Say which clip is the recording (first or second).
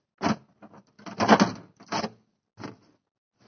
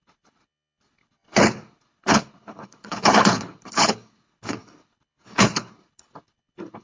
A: first